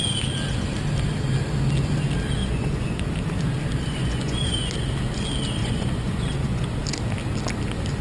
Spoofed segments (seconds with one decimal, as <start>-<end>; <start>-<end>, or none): 2.4-3.0; 4.0-4.7; 5.6-6.8

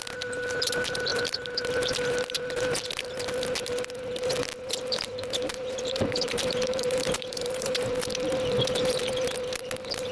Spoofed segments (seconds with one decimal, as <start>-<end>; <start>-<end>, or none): 4.8-7.9

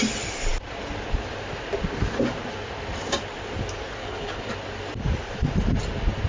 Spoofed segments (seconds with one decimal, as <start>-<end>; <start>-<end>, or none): 4.0-4.5

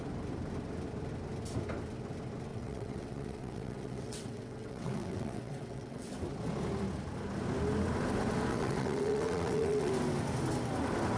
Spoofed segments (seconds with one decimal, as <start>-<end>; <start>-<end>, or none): 2.5-6.1; 8.5-9.9

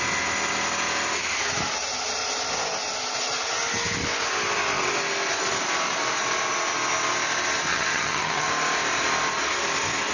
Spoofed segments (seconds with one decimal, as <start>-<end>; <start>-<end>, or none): 7.7-8.5

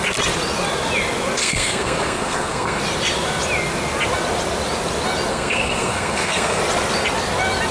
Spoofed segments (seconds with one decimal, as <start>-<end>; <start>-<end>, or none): 1.4-2.8; 5.3-6.6